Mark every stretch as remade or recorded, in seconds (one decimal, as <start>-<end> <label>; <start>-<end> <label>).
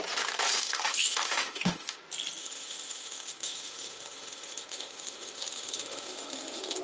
0.0-0.6 recorded; 0.6-2.0 remade; 2.0-2.4 recorded; 2.4-6.8 remade